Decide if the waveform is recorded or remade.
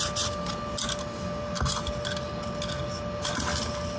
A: recorded